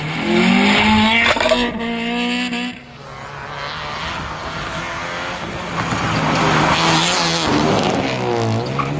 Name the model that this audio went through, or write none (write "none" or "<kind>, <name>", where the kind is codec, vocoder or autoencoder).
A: none